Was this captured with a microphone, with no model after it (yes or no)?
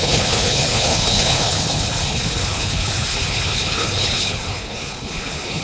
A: no